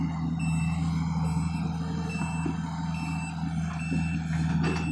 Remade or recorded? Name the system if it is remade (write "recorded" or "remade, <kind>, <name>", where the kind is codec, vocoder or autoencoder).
recorded